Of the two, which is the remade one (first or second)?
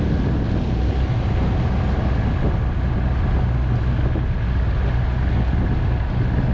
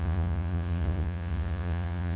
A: second